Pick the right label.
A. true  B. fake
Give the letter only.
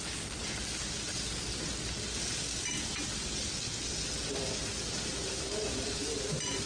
A